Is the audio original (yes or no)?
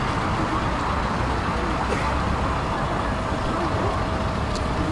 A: yes